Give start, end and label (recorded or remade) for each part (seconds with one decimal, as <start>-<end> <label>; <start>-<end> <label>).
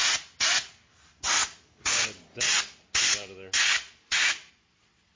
0.0-5.2 recorded